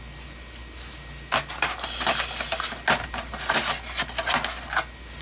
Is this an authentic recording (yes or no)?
yes